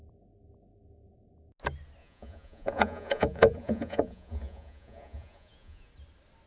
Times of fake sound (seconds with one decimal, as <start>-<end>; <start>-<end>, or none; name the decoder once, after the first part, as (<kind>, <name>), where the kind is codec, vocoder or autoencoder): 2.0-5.9 (vocoder, Vocos)